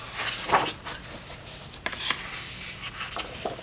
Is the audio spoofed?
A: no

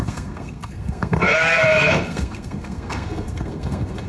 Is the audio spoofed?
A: yes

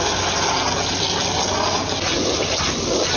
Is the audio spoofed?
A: no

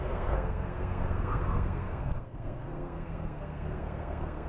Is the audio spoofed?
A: yes